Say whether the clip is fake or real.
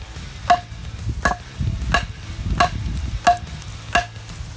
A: real